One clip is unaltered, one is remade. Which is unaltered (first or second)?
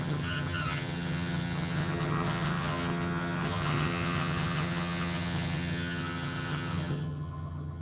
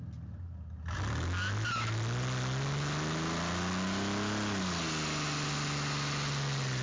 second